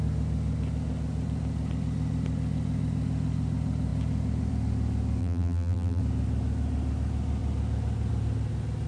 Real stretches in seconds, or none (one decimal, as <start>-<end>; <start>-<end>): 0.0-5.2; 6.0-8.9